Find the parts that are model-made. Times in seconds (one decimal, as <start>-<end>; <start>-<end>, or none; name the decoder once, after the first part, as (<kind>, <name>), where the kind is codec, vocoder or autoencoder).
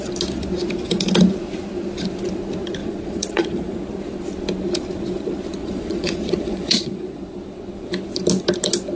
2.8-3.8 (vocoder, Vocos); 5.6-7.2